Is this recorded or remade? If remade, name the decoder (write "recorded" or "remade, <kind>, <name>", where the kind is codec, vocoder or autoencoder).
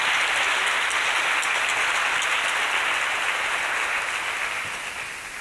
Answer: recorded